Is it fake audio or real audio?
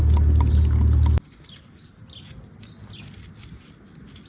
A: real